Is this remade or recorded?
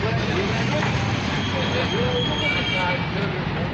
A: recorded